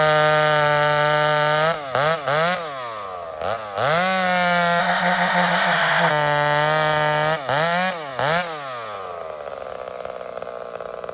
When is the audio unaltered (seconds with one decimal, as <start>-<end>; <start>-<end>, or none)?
0.0-4.8; 6.1-11.1